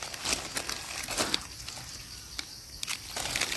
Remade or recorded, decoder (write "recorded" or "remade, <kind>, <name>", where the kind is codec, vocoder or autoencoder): recorded